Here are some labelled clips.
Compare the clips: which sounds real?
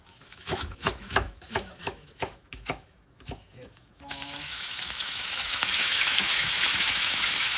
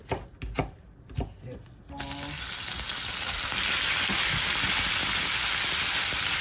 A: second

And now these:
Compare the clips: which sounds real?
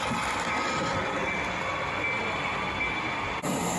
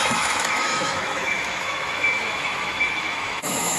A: first